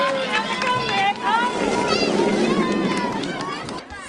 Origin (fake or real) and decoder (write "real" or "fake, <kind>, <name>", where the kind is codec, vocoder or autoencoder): real